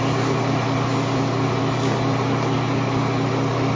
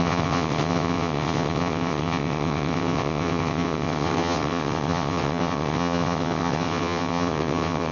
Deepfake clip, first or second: second